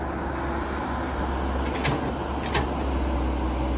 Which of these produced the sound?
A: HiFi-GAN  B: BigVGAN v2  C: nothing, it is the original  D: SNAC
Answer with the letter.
C